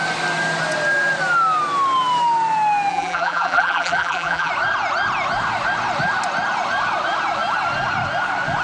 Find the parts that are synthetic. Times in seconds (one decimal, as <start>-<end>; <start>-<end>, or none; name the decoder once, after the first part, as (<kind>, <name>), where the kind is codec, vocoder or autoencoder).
2.9-4.5 (vocoder, BigVGAN v2)